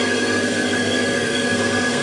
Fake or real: fake